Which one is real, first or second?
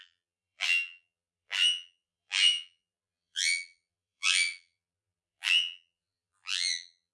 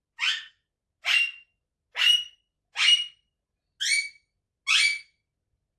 second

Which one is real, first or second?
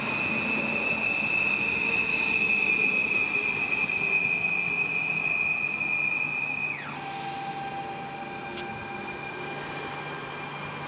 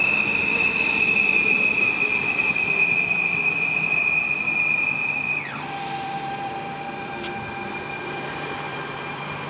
first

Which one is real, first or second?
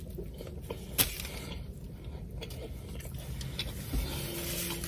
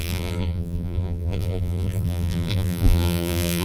first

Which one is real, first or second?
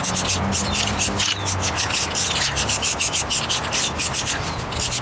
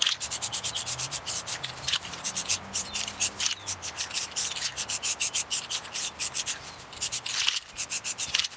first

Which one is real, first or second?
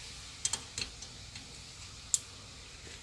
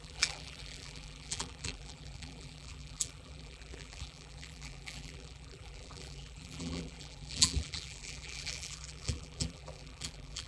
first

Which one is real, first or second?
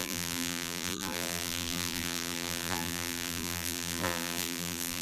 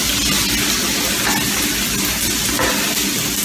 second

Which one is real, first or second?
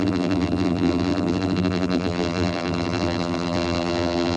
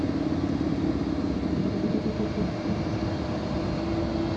second